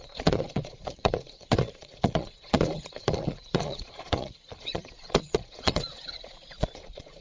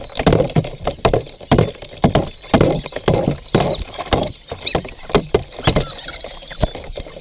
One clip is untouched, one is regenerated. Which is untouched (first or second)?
second